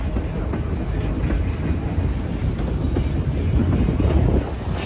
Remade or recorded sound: recorded